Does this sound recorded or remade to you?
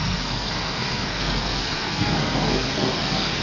remade